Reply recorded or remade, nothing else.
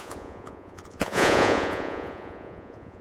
remade